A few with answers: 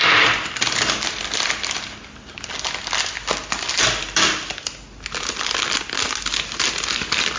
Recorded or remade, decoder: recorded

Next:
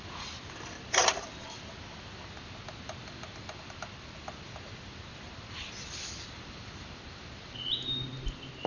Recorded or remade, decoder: recorded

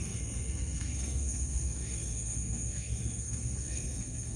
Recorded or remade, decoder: remade, codec, SNAC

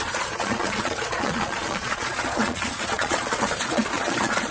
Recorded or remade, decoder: remade, vocoder, Vocos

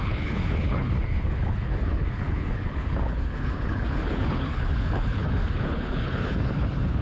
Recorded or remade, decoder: remade, codec, HILCodec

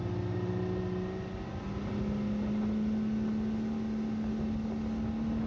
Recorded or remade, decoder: recorded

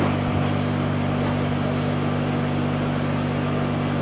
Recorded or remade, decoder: recorded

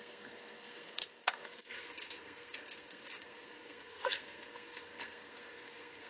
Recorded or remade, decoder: remade, codec, SNAC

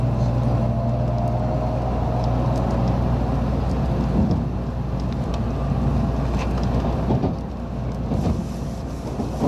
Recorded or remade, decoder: recorded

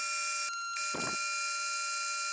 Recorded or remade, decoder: recorded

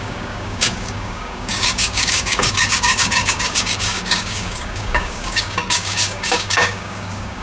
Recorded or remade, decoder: remade, codec, DAC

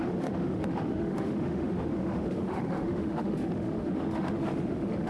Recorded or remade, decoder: remade, autoencoder, DAC-VAE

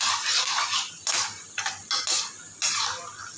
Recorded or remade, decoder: recorded